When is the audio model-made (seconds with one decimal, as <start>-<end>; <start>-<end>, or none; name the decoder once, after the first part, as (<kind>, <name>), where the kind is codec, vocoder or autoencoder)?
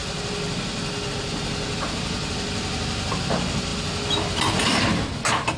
none